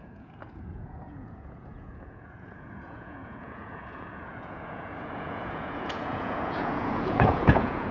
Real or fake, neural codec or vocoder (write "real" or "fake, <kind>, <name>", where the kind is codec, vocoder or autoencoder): fake, vocoder, Vocos